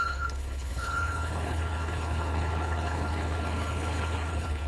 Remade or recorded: remade